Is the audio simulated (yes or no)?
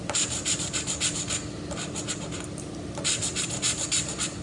no